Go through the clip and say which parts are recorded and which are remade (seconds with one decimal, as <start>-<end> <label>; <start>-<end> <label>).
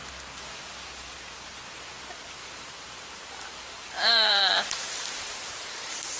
0.0-2.4 recorded; 2.4-6.2 remade